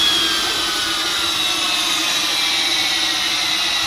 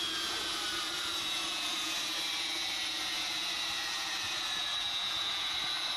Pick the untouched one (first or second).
first